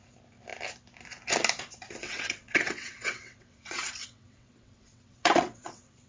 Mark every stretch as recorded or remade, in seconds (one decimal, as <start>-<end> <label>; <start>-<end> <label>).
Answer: 0.0-2.0 recorded; 2.0-6.1 remade